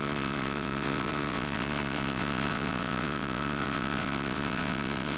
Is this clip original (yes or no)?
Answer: no